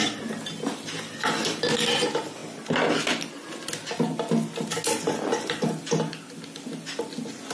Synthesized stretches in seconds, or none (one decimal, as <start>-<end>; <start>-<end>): none